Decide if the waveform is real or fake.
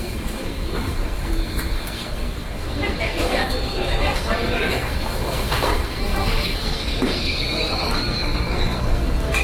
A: fake